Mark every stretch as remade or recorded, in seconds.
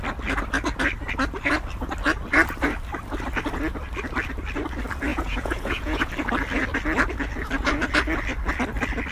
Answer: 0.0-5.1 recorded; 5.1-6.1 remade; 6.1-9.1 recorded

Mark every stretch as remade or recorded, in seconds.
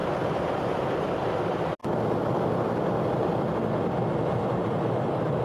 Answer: 0.0-0.9 remade; 0.9-4.4 recorded; 4.4-5.4 remade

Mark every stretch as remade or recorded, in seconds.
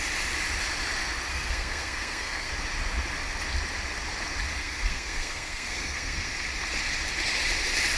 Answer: 0.0-1.3 recorded; 1.3-2.5 remade; 2.5-4.6 recorded; 4.6-6.3 remade; 6.3-8.0 recorded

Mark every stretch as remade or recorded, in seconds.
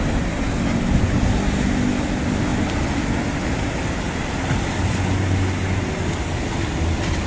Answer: 0.0-7.3 recorded